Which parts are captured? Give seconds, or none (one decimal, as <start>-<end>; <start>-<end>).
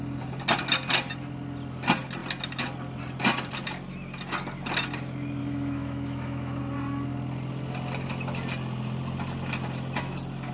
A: 0.0-5.4; 6.6-10.5